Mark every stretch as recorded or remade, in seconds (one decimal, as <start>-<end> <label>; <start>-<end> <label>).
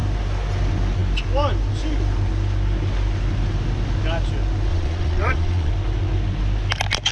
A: 0.0-4.7 recorded; 4.7-5.7 remade; 5.7-7.1 recorded